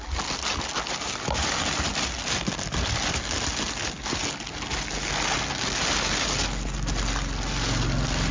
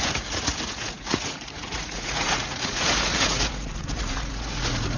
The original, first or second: first